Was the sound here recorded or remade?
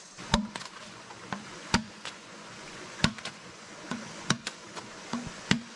remade